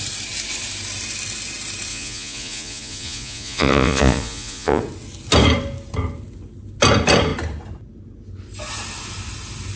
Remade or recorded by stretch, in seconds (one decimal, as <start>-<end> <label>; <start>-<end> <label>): 0.0-1.9 recorded; 1.9-4.8 remade; 4.8-9.8 recorded